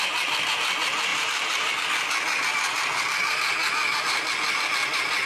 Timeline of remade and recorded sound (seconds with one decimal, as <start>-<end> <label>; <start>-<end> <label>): 0.0-1.1 recorded; 1.1-1.7 remade; 1.7-5.3 recorded